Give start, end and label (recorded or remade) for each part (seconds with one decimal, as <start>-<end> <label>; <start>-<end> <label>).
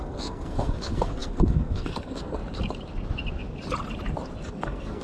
0.0-2.4 remade; 2.4-4.5 recorded; 4.5-5.0 remade